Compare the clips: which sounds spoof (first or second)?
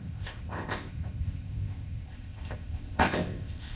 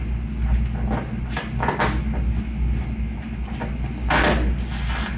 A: first